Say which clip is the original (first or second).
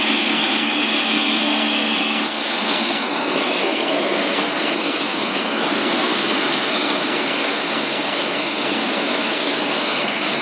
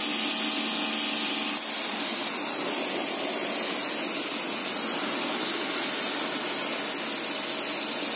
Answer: second